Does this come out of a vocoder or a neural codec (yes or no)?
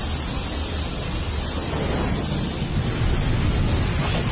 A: no